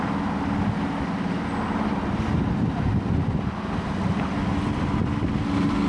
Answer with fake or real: real